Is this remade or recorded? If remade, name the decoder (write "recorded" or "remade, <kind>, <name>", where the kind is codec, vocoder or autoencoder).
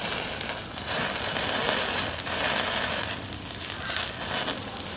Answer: recorded